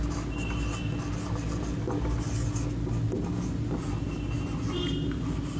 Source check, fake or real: real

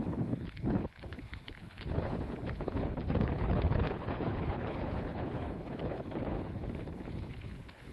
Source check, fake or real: fake